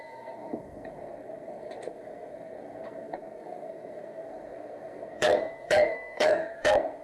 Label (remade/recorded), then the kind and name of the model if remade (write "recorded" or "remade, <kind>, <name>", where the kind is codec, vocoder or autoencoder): remade, codec, SNAC